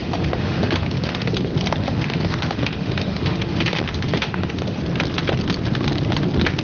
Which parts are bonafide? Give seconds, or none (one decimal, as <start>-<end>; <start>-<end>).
1.3-1.8; 4.8-6.6